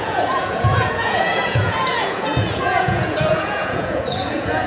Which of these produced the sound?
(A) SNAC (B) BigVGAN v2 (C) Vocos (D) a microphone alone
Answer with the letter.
C